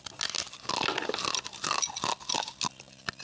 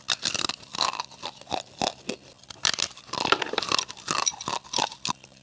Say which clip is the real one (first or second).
first